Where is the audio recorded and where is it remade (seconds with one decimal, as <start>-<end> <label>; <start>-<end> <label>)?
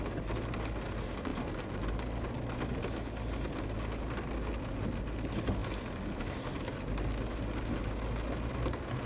0.0-9.1 recorded